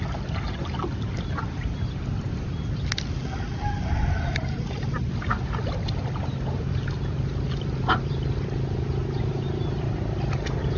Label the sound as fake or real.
real